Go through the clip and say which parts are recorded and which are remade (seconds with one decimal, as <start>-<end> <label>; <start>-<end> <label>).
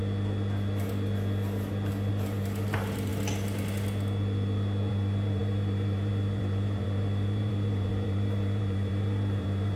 0.0-2.1 recorded; 2.1-3.1 remade; 3.1-4.9 recorded; 4.9-9.8 remade